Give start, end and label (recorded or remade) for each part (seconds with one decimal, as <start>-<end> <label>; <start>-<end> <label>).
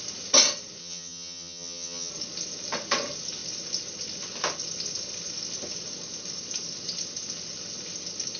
0.0-0.8 recorded; 0.8-2.1 remade; 2.1-8.4 recorded